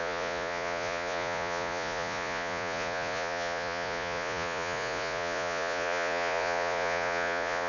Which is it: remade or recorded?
remade